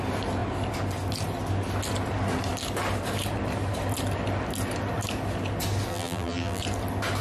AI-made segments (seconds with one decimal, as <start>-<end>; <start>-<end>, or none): 5.9-6.6